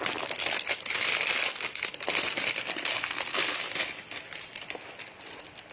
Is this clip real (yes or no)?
yes